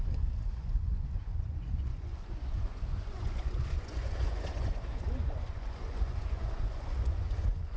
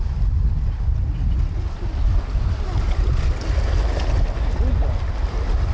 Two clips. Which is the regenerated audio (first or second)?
first